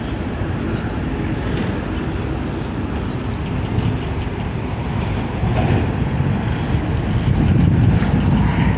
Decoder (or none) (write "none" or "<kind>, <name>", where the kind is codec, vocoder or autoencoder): none